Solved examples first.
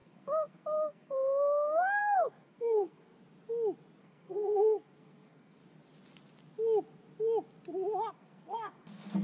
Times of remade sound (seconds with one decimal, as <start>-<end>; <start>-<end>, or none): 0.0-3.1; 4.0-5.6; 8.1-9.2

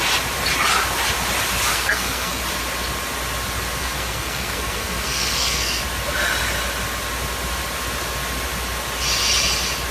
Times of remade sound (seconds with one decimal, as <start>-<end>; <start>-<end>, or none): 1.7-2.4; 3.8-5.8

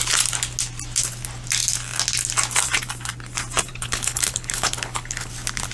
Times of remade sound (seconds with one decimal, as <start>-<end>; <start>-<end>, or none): 3.7-5.3

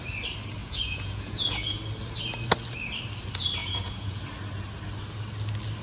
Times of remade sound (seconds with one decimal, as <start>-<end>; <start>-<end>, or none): 0.6-1.8; 3.6-4.2